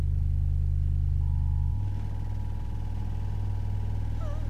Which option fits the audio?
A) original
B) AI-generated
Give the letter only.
A